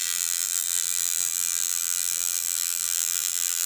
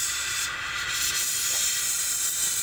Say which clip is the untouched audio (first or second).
second